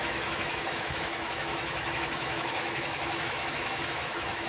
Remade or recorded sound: remade